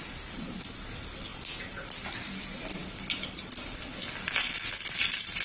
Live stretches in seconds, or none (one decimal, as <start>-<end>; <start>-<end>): 0.0-5.4